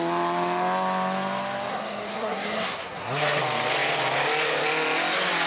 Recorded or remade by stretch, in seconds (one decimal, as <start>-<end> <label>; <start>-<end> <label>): 0.0-1.7 recorded; 1.7-3.4 remade; 3.4-5.5 recorded